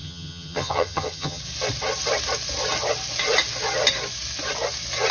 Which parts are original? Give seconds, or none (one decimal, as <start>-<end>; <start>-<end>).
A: 1.4-5.1